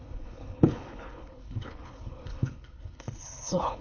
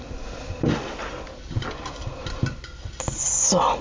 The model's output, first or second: first